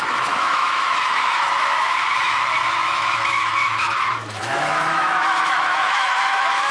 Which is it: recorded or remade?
remade